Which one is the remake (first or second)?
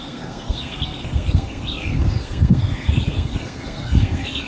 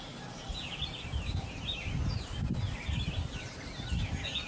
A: first